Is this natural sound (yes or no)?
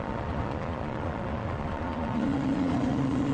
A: no